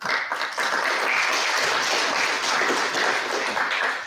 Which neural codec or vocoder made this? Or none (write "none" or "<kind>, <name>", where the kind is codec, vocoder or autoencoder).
none